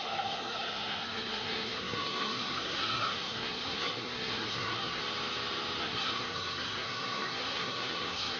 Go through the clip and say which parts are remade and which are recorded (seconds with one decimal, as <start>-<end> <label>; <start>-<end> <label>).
0.0-5.0 remade; 5.0-5.8 recorded; 5.8-8.4 remade